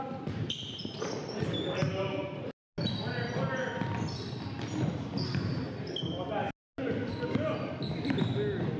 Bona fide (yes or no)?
yes